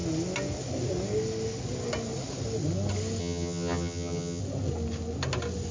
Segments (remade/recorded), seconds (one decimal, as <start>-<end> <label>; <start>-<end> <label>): 0.0-3.2 recorded; 3.2-4.4 remade; 4.4-5.7 recorded